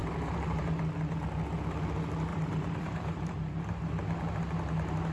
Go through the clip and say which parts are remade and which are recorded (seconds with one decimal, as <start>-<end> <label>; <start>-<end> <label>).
0.0-0.7 remade; 0.7-2.3 recorded; 2.3-3.9 remade; 3.9-5.1 recorded